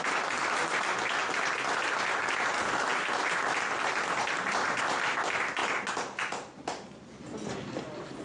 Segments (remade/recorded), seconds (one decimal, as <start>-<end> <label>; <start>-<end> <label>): 0.0-8.2 recorded

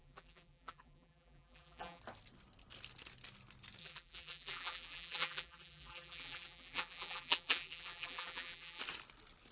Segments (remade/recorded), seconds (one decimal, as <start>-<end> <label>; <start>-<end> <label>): 0.0-2.0 remade; 2.0-3.8 recorded; 3.8-8.8 remade; 8.8-9.5 recorded

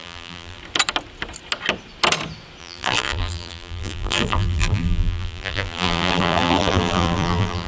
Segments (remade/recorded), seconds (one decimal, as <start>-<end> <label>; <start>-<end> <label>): 0.0-0.6 remade; 0.6-2.6 recorded; 2.6-7.7 remade